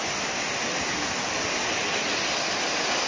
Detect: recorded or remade recorded